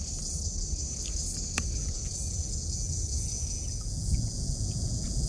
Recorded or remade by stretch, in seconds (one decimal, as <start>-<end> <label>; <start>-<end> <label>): 0.0-1.8 recorded; 1.8-5.3 remade